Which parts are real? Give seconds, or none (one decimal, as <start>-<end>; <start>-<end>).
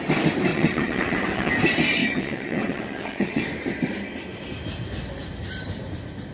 0.0-0.5; 1.5-2.0; 3.4-6.3